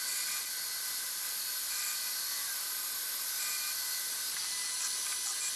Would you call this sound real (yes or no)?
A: yes